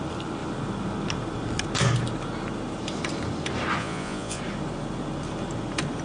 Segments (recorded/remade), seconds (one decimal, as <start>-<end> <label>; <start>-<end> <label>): 0.0-3.8 recorded; 3.8-4.4 remade; 4.4-6.0 recorded